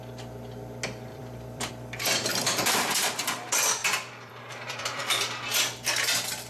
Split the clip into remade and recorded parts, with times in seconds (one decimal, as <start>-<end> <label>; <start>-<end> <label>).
0.0-1.1 recorded; 1.1-1.7 remade; 1.7-2.3 recorded; 2.3-2.9 remade; 2.9-3.8 recorded; 3.8-5.0 remade; 5.0-6.5 recorded